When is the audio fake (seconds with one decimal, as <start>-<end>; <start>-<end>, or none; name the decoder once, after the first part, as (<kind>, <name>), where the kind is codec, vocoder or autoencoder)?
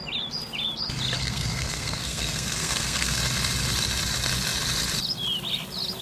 1.2-3.2 (codec, SNAC)